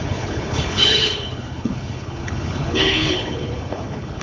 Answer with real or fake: fake